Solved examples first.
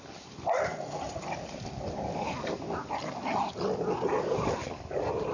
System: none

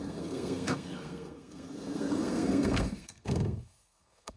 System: codec, SNAC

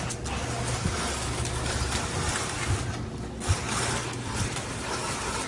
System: none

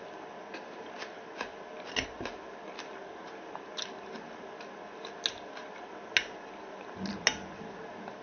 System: none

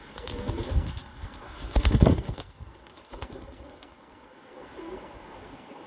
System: codec, SNAC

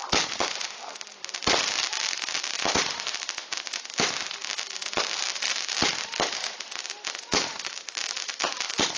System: none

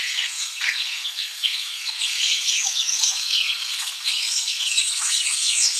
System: codec, SNAC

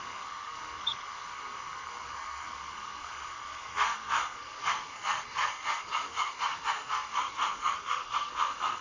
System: codec, SNAC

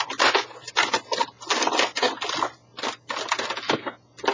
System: none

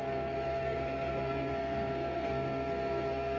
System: codec, SNAC